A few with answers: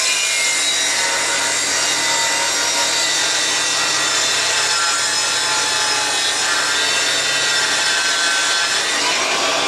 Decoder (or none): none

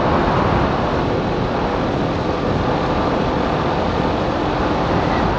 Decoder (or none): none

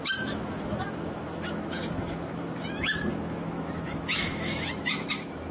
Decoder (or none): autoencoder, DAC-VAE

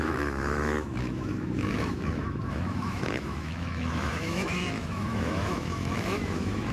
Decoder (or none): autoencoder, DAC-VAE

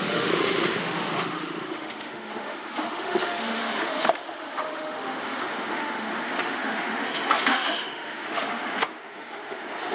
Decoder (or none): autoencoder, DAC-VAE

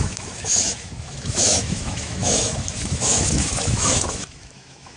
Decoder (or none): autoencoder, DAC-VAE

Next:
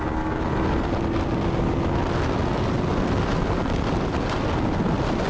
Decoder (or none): none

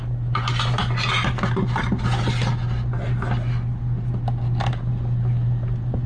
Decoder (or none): none